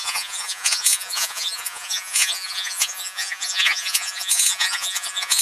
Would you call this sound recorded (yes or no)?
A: no